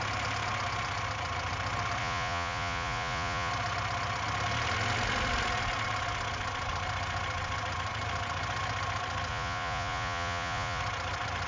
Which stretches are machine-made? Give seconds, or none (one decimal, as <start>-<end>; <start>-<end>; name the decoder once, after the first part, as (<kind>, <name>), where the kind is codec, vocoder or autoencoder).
2.0-3.5 (vocoder, Vocos); 9.3-10.8